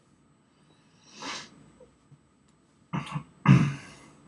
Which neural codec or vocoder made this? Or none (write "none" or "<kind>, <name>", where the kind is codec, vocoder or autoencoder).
none